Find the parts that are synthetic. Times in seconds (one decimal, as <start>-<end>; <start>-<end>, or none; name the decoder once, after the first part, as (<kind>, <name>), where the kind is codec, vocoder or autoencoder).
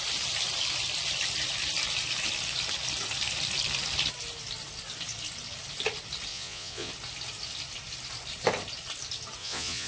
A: 6.3-6.9 (vocoder, Vocos); 9.4-9.9